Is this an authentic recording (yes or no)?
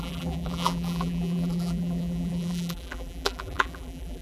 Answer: no